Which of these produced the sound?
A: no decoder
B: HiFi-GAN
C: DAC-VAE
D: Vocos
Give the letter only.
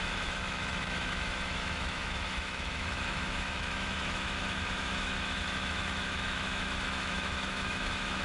C